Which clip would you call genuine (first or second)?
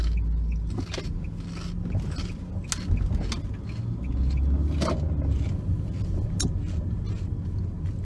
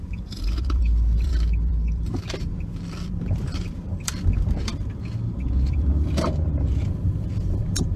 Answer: first